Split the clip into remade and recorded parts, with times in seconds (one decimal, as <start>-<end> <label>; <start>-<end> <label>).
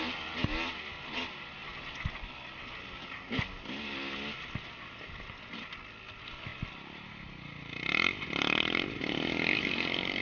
0.0-10.2 recorded